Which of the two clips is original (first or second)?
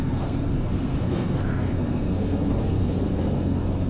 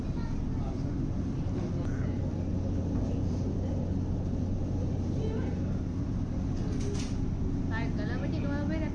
second